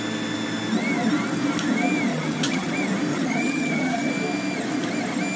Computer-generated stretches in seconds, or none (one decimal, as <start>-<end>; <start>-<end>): 2.1-2.7; 3.1-4.1